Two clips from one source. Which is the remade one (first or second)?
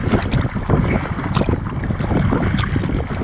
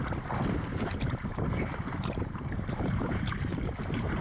second